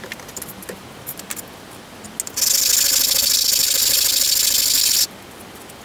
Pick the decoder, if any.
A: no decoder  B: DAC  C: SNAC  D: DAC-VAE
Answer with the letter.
A